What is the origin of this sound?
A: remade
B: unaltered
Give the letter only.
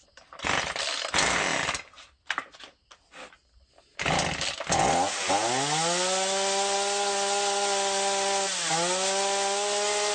B